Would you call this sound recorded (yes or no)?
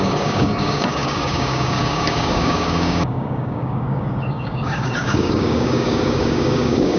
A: no